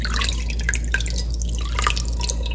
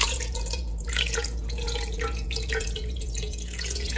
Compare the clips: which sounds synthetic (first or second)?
second